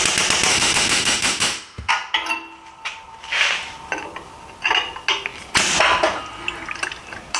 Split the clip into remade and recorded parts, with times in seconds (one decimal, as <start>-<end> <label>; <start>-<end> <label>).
0.0-0.5 recorded; 0.5-1.9 remade; 1.9-7.4 recorded